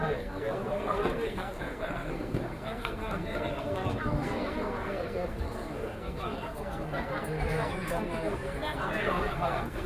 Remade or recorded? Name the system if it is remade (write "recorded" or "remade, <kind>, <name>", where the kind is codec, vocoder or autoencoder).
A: remade, codec, SNAC